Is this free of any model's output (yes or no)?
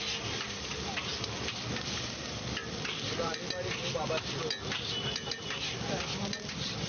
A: yes